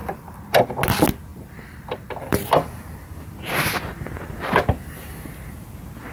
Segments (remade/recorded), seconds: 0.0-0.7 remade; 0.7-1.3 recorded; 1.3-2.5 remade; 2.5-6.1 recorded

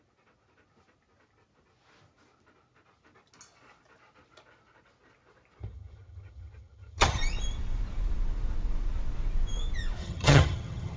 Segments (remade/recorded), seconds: 0.0-5.6 recorded; 5.6-7.2 remade; 7.2-10.0 recorded; 10.0-11.0 remade

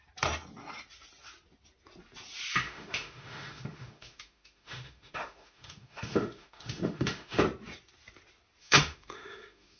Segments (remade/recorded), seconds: 0.0-2.5 recorded; 2.5-7.4 remade; 7.4-8.6 recorded; 8.6-9.8 remade

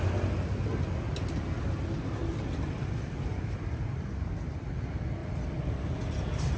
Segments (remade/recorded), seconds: 0.0-2.2 recorded; 2.2-4.1 remade; 4.1-5.2 recorded; 5.2-6.6 remade

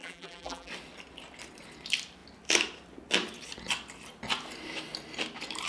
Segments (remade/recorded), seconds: 0.0-0.7 remade; 0.7-5.7 recorded

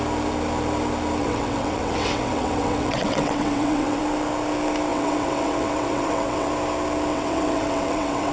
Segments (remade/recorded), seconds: 0.0-1.2 recorded; 1.2-4.0 remade; 4.0-4.9 recorded; 4.9-6.5 remade; 6.5-7.1 recorded; 7.1-8.3 remade

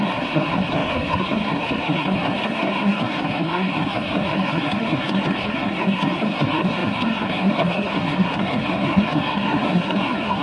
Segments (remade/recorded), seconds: 0.0-10.4 remade